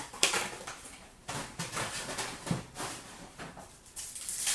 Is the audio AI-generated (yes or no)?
yes